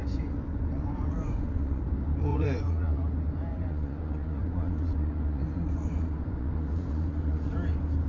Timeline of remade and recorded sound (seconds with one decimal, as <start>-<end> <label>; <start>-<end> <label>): 0.0-1.8 remade; 1.8-2.3 recorded; 2.3-3.0 remade; 3.0-3.5 recorded; 3.5-7.5 remade; 7.5-8.1 recorded